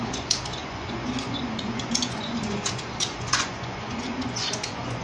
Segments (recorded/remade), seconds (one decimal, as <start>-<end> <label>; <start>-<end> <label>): 0.0-5.0 remade